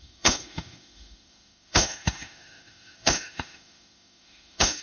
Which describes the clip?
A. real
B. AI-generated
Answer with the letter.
B